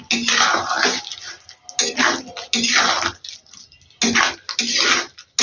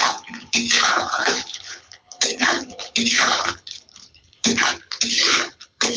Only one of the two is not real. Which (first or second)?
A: second